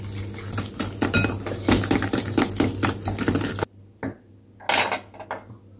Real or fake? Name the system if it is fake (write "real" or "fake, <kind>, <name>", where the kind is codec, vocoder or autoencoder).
real